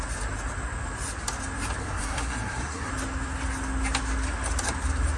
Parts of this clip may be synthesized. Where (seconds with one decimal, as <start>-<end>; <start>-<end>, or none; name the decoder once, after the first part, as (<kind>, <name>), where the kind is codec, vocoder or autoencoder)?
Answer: 1.8-2.9 (codec, SNAC)